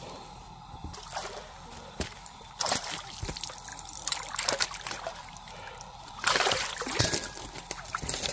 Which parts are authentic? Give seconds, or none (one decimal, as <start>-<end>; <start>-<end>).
none